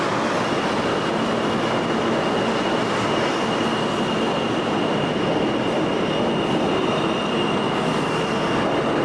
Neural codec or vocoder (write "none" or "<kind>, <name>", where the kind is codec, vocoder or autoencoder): none